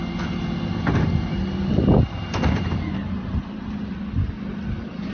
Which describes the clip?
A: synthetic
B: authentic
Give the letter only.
B